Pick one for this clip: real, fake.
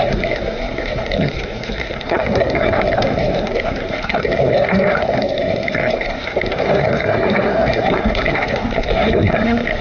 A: fake